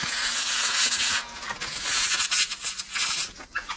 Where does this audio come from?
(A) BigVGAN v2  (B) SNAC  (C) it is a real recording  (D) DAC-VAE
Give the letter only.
C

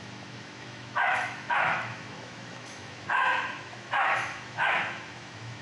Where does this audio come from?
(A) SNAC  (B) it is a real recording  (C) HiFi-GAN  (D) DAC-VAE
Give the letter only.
D